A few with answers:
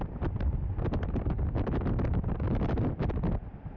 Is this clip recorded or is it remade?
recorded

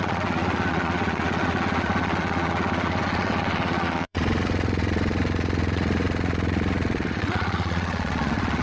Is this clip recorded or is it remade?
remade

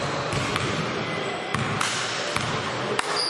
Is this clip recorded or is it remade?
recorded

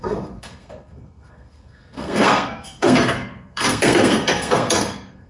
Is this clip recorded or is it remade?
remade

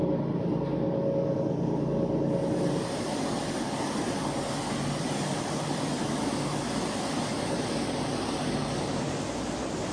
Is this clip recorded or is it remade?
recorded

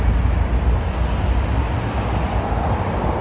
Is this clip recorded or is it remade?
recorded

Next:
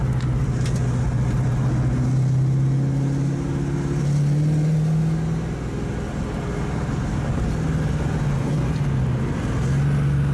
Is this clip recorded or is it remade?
recorded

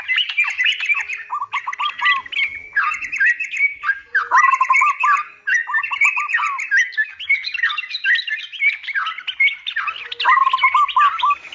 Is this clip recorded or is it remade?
recorded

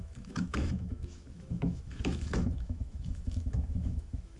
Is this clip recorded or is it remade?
remade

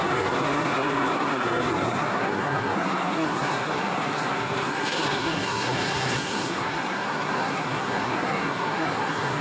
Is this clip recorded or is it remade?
remade